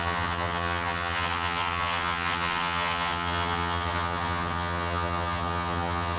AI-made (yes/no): yes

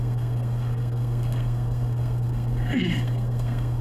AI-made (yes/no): yes